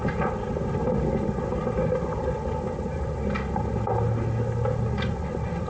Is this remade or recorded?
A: recorded